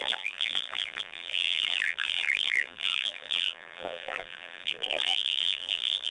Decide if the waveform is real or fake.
fake